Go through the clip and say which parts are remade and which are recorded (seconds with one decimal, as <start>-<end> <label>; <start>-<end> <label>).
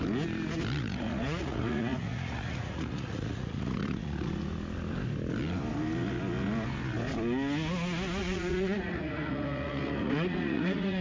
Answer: 0.0-0.8 recorded; 0.8-4.3 remade; 4.3-8.2 recorded; 8.2-11.0 remade